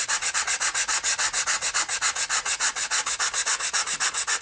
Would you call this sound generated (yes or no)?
yes